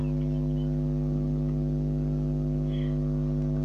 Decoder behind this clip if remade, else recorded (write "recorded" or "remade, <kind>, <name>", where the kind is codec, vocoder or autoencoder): recorded